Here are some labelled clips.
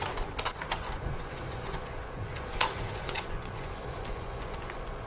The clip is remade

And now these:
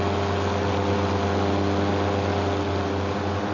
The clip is recorded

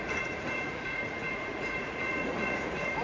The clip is remade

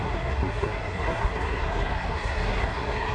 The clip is remade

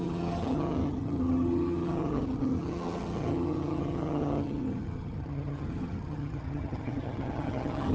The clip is remade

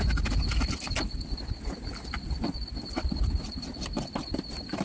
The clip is recorded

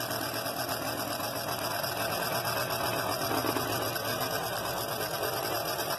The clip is recorded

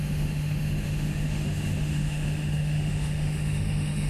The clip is remade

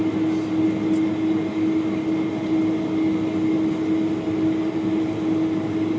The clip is recorded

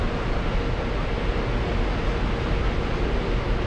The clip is recorded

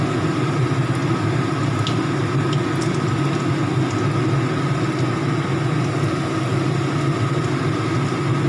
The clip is recorded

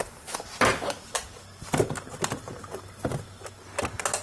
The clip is recorded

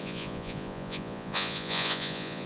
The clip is remade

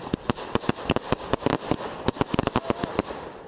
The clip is recorded